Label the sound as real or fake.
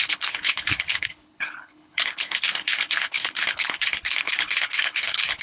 fake